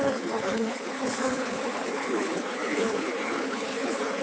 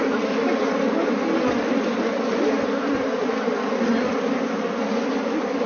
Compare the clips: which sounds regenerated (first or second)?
first